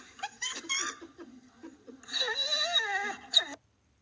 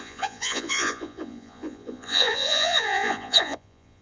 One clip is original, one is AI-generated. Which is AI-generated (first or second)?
second